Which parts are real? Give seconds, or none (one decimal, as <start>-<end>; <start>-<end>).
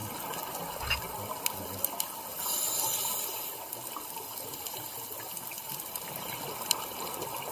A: 0.0-7.5